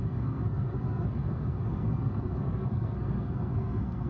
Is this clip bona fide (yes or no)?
no